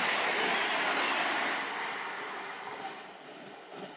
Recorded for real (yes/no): yes